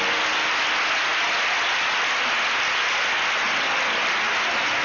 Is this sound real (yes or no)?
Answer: yes